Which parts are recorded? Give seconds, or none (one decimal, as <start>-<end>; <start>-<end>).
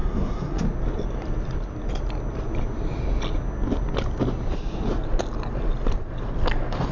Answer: 0.6-6.9